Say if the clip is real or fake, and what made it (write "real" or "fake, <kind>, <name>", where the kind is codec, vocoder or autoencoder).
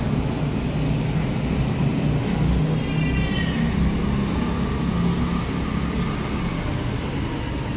real